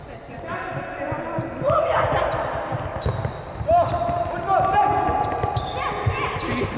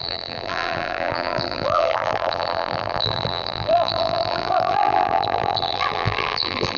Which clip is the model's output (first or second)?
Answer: second